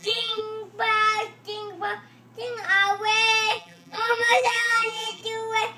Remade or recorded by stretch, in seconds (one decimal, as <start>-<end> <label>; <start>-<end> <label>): 0.0-0.4 remade; 0.4-3.5 recorded; 3.5-5.2 remade; 5.2-5.8 recorded